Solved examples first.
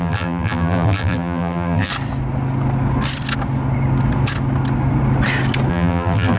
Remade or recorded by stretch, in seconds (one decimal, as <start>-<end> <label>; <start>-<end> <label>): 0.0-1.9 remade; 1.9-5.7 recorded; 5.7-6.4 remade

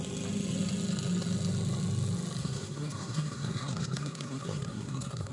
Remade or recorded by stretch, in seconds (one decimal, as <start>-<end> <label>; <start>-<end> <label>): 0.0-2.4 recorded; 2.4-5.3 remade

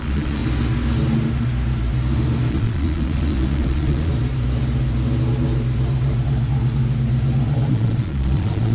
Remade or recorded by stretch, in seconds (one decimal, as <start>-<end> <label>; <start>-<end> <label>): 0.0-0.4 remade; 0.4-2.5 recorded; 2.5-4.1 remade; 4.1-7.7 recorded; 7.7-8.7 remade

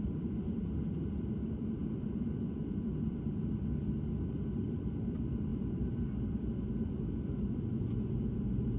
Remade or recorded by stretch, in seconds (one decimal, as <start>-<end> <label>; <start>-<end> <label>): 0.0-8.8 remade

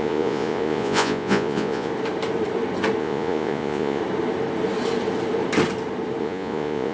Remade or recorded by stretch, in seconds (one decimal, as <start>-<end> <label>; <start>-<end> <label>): 0.0-1.9 remade; 1.9-3.0 recorded; 3.0-4.0 remade; 4.0-6.2 recorded; 6.2-6.9 remade

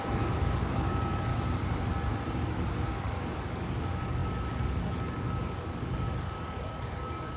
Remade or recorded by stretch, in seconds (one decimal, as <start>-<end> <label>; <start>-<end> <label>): 0.0-1.3 remade; 1.3-2.9 recorded; 2.9-7.4 remade

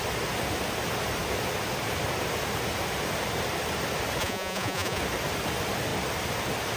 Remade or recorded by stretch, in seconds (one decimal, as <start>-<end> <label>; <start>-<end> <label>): 0.0-4.2 recorded; 4.2-5.0 remade; 5.0-6.8 recorded

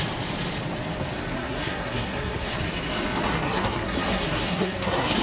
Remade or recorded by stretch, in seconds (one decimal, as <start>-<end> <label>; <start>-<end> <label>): 0.0-1.3 recorded; 1.3-2.5 remade; 2.5-3.3 recorded; 3.3-5.2 remade